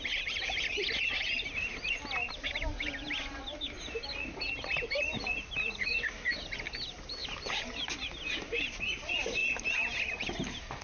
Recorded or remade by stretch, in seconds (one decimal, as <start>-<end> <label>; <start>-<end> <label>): 0.0-10.8 recorded

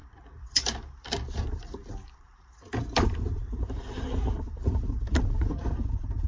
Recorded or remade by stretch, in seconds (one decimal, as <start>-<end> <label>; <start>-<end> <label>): 0.0-6.3 remade

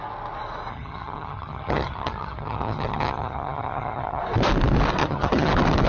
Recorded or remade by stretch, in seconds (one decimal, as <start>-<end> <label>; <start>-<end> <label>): 0.0-0.7 recorded; 0.7-4.2 remade; 4.2-5.0 recorded; 5.0-5.5 remade; 5.5-5.9 recorded